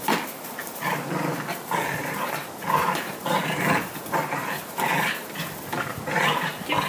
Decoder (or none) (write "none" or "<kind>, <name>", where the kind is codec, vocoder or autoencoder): none